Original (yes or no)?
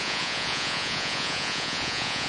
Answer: no